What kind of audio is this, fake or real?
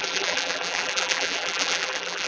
fake